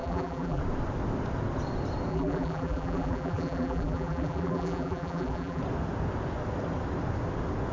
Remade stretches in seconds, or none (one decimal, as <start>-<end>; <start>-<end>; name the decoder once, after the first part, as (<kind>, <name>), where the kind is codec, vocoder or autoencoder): 0.0-0.6 (vocoder, BigVGAN v2); 2.1-5.6